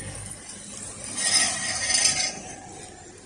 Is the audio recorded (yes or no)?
yes